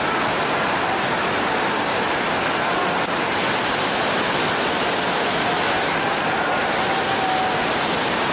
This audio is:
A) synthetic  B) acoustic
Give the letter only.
B